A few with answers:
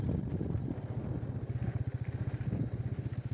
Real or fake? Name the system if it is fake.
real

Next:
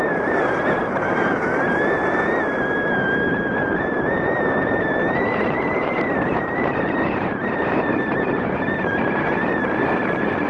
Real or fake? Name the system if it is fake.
fake, vocoder, BigVGAN v2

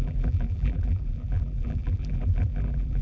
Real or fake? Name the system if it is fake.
fake, vocoder, BigVGAN v2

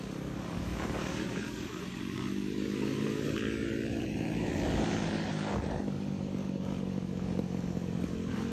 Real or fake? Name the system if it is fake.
fake, codec, DAC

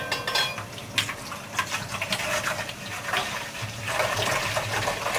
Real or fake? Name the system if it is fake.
real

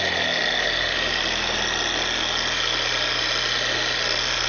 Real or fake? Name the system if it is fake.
real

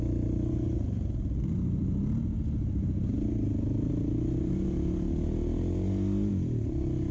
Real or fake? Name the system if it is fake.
real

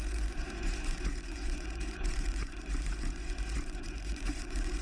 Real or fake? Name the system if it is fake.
fake, vocoder, Vocos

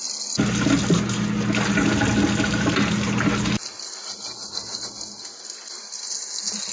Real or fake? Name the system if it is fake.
real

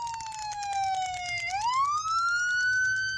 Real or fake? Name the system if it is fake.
real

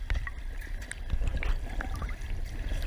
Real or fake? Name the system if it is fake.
real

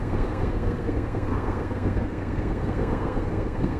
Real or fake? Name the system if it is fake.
fake, codec, SNAC